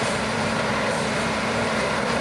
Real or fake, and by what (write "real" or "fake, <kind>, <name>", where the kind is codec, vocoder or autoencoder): fake, vocoder, BigVGAN v2